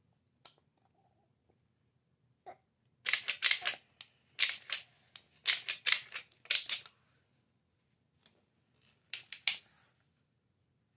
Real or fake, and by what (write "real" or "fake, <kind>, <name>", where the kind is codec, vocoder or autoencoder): real